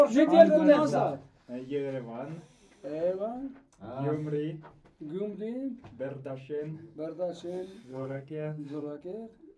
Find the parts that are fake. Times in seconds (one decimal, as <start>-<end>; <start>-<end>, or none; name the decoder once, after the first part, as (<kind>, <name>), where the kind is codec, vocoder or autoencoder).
7.9-9.0 (codec, SNAC)